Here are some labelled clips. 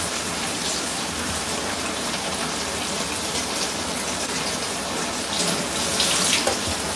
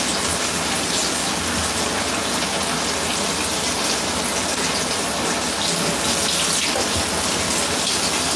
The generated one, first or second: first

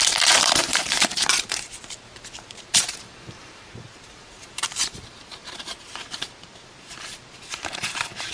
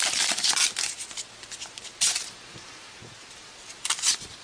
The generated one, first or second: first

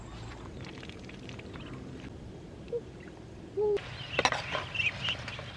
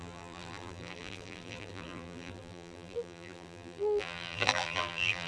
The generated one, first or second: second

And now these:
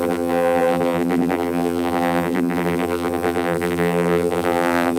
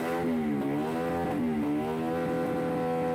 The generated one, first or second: first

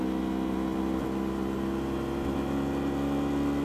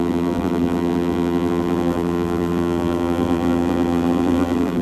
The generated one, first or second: second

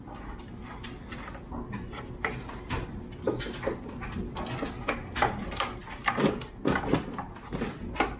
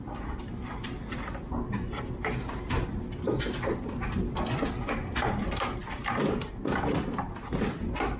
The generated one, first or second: second